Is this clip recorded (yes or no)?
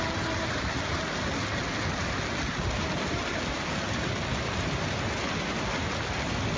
yes